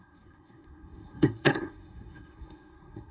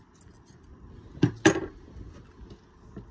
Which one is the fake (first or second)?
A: first